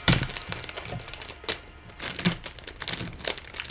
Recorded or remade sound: recorded